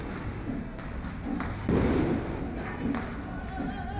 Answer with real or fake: real